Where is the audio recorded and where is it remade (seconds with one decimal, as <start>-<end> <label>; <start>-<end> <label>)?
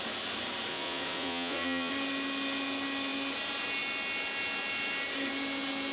0.0-0.7 recorded; 0.7-1.9 remade; 1.9-5.9 recorded